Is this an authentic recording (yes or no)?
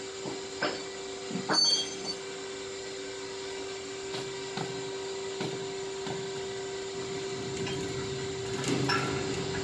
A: yes